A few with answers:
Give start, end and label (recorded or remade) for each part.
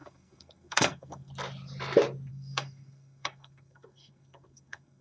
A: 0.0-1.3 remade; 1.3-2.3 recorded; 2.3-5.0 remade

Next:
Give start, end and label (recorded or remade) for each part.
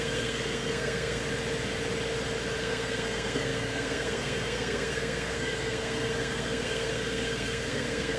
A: 0.0-1.2 remade; 1.2-2.6 recorded; 2.6-8.2 remade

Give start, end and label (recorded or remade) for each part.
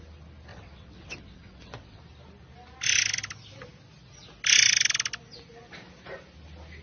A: 0.0-0.5 recorded; 0.5-2.0 remade; 2.0-6.8 recorded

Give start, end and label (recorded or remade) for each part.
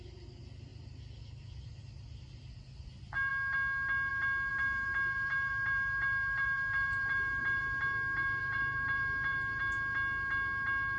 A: 0.0-4.5 recorded; 4.5-9.6 remade; 9.6-11.0 recorded